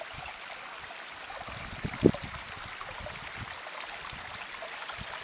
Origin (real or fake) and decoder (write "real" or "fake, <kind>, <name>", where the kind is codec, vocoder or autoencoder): real